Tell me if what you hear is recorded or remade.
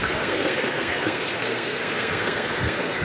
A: remade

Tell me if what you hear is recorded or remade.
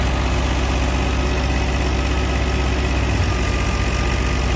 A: recorded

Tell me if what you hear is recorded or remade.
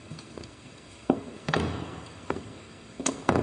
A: remade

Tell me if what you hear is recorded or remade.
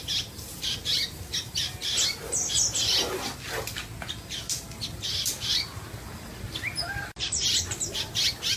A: recorded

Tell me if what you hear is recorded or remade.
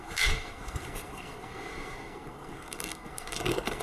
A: remade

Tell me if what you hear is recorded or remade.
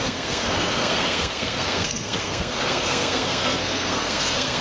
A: remade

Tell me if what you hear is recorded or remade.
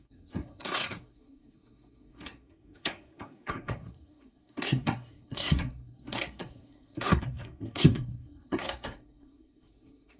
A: remade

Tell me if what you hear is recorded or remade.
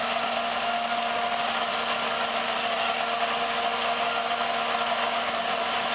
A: recorded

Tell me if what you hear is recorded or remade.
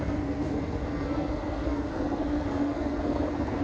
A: remade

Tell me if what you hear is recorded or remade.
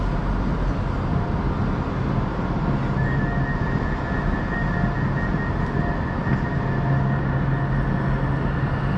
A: recorded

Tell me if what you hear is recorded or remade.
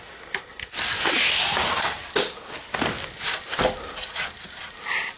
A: recorded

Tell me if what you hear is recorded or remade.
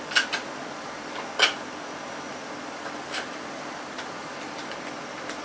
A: recorded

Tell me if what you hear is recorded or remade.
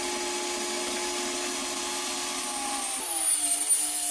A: recorded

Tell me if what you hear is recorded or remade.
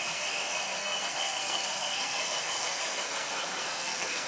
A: remade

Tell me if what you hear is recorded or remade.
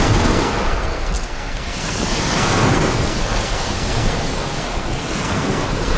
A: remade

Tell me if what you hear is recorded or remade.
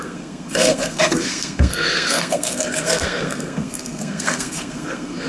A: remade